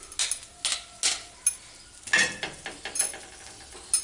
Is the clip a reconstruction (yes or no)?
no